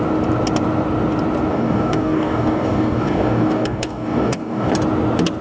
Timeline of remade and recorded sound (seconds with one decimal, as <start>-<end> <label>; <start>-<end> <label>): 0.0-1.5 recorded; 1.5-4.7 remade; 4.7-5.4 recorded

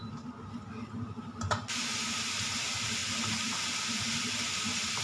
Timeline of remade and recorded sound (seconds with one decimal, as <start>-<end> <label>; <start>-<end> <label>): 0.0-5.0 recorded

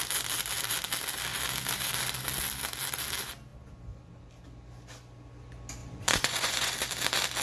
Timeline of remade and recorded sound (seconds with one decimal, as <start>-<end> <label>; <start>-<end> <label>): 0.0-5.8 recorded; 5.8-6.7 remade; 6.7-7.4 recorded

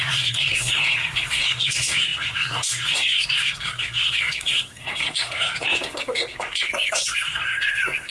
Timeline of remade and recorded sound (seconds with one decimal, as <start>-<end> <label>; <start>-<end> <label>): 0.0-8.1 remade

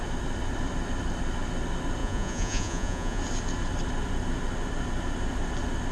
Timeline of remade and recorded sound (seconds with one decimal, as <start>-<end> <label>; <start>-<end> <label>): 0.0-2.0 recorded; 2.0-3.2 remade; 3.2-5.9 recorded